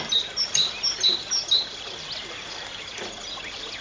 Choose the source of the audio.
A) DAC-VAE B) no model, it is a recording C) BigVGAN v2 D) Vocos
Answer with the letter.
B